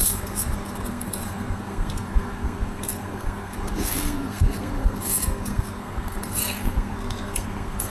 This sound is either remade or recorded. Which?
remade